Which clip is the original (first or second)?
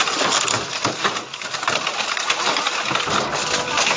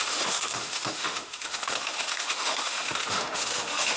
first